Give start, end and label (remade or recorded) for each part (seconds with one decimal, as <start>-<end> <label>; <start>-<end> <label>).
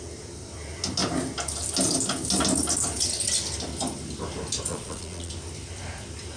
0.0-4.7 recorded; 4.7-5.3 remade; 5.3-6.4 recorded